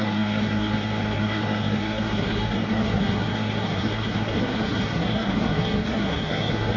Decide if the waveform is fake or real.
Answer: fake